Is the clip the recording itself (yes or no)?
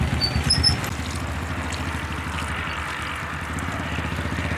yes